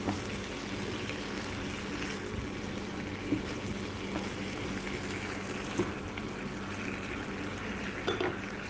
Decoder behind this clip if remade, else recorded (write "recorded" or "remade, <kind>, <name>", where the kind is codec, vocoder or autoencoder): recorded